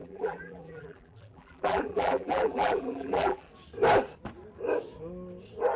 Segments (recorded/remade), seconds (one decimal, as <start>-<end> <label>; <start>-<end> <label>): 0.0-3.5 remade; 3.5-5.8 recorded